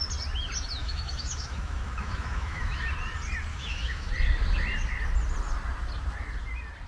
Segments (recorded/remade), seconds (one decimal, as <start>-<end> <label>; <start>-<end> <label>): 0.0-0.8 recorded; 0.8-2.9 remade; 2.9-3.5 recorded; 3.5-4.1 remade; 4.1-6.9 recorded